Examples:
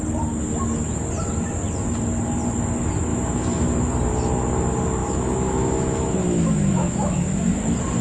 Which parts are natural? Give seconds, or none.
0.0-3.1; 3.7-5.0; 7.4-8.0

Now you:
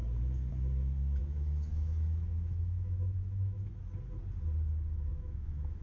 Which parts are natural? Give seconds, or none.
0.0-1.2; 3.7-5.1

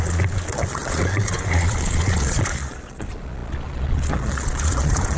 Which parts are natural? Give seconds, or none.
none

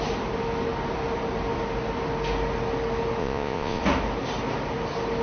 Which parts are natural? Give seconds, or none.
0.0-3.2; 3.8-5.2